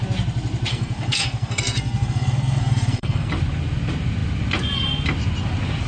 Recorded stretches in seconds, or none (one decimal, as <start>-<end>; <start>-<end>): 0.0-0.7; 3.3-5.9